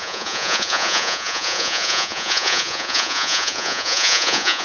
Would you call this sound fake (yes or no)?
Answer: yes